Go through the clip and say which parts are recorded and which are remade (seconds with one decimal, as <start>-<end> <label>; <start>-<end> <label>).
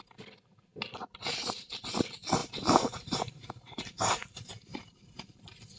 0.0-2.4 recorded; 2.4-5.8 remade